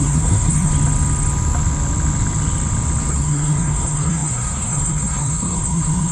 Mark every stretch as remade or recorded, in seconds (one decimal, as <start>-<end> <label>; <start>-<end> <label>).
0.0-0.7 remade; 0.7-3.1 recorded; 3.1-6.1 remade